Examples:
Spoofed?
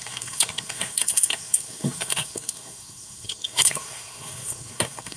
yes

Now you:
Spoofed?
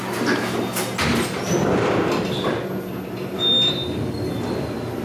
no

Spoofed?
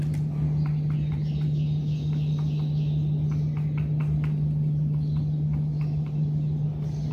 no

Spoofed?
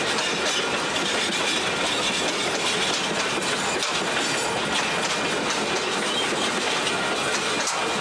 no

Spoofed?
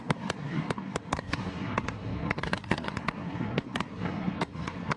yes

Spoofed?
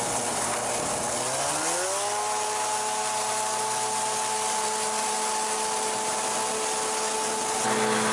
no